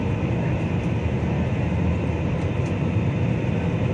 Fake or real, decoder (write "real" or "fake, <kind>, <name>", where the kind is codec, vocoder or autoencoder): real